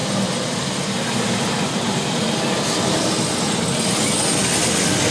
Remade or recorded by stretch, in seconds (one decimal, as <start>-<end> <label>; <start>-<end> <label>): 0.0-3.1 remade; 3.1-5.1 recorded